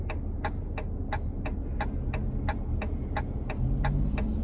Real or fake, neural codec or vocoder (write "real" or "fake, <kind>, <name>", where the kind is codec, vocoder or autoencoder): real